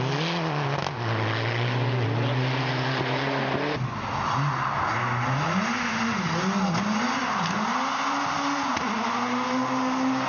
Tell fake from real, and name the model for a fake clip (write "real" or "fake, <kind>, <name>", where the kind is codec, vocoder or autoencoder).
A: real